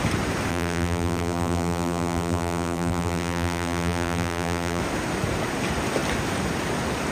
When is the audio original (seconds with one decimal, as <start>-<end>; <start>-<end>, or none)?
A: 0.0-0.5; 4.8-7.1